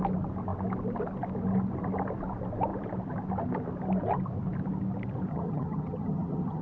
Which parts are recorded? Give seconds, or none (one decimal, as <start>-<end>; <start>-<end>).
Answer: 0.0-5.3